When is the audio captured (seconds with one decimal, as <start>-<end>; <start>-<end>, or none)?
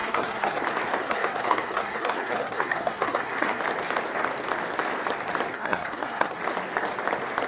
0.6-1.0; 3.6-5.5; 6.4-7.5